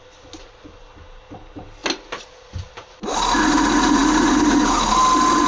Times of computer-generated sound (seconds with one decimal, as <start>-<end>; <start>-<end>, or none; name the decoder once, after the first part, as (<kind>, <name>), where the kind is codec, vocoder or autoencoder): none